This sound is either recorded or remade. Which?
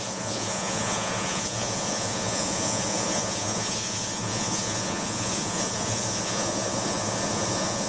remade